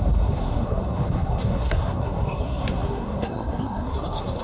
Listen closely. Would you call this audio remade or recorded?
remade